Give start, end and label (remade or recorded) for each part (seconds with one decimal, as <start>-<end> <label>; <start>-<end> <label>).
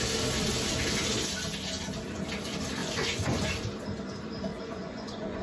0.0-2.8 recorded; 2.8-3.5 remade; 3.5-4.5 recorded; 4.5-5.4 remade